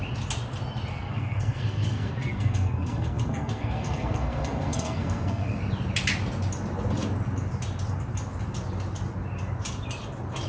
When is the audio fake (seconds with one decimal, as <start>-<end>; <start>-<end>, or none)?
0.9-5.6